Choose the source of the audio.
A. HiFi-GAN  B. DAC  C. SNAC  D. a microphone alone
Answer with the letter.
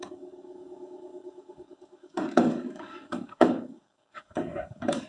B